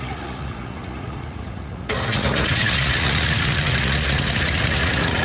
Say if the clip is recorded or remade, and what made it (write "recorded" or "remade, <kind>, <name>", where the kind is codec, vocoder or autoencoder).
remade, vocoder, Vocos